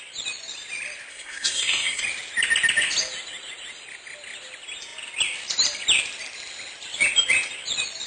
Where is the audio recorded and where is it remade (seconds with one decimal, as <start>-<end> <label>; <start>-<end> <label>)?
0.0-1.1 recorded; 1.1-2.0 remade; 2.0-8.1 recorded